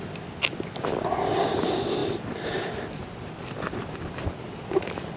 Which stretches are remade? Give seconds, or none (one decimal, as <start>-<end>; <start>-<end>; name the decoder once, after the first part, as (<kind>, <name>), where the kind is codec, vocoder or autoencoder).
none

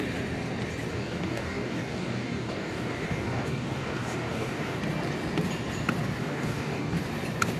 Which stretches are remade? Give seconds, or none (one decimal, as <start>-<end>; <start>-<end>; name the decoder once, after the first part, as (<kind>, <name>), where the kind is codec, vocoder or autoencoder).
0.9-4.8 (codec, DAC); 6.2-7.0

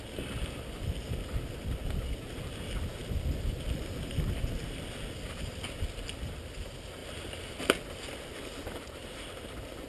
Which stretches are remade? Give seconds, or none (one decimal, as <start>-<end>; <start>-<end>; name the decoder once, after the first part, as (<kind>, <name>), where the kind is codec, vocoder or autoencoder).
none